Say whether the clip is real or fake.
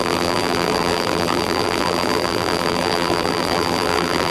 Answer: fake